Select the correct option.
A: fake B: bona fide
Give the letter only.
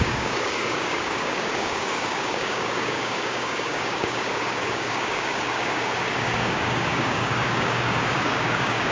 A